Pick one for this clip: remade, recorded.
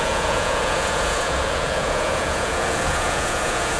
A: remade